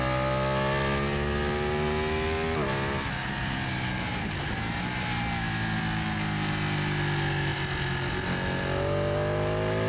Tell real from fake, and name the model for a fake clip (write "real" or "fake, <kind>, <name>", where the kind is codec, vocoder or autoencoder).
real